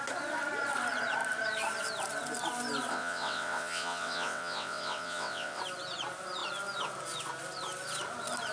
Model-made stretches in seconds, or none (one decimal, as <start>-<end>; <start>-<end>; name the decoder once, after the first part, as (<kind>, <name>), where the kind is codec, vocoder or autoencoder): 2.9-5.6 (vocoder, WaveNeXt)